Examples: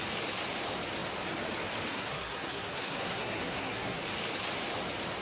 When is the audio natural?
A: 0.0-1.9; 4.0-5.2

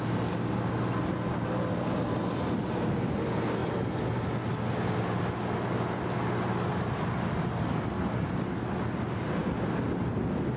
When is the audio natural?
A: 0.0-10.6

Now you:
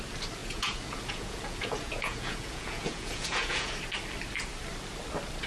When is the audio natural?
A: 0.0-0.4; 3.7-5.5

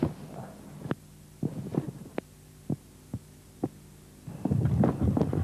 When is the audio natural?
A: 0.0-5.4

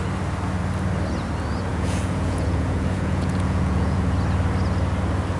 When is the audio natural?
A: 0.0-1.7; 4.0-5.4

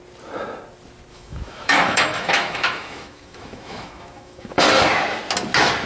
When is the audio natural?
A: 0.0-1.1; 4.6-5.9